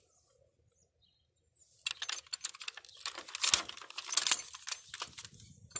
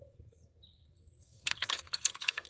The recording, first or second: first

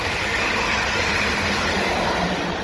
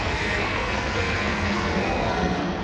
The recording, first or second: first